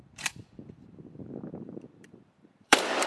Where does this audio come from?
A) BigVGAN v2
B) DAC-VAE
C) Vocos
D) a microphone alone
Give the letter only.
A